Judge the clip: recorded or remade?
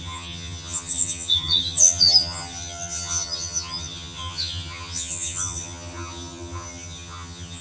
remade